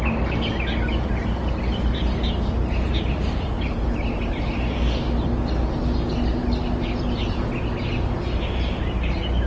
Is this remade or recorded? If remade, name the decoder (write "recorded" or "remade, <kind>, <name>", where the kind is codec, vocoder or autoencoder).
recorded